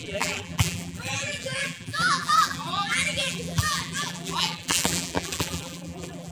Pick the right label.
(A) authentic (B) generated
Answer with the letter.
B